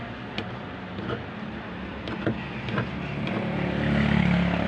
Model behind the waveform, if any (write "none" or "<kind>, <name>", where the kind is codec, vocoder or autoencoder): none